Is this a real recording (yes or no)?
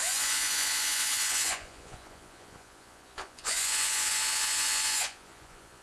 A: no